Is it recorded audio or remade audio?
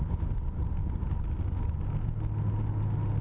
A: recorded